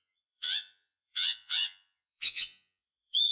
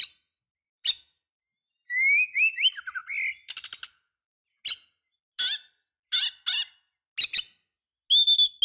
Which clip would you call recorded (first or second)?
second